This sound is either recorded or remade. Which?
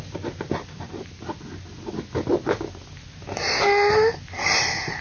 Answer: recorded